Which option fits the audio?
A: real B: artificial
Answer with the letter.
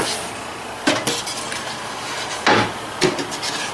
A